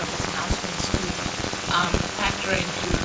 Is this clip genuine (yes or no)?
no